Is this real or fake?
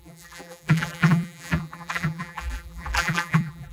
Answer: fake